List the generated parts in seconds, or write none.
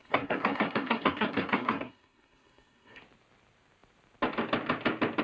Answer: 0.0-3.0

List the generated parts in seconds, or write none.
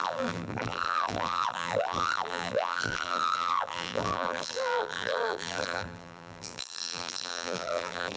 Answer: 0.0-8.2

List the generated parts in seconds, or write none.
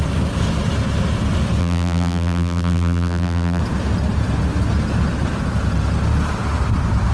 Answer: 1.6-3.6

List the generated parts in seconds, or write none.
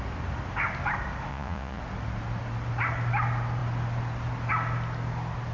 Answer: 1.3-1.8